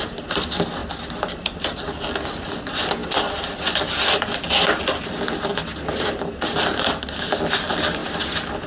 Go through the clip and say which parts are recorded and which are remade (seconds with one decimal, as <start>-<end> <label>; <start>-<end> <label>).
0.0-8.7 recorded